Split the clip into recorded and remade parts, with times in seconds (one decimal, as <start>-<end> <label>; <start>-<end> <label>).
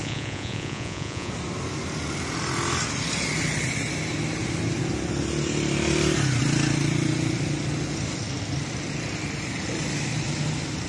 0.0-1.3 remade; 1.3-10.9 recorded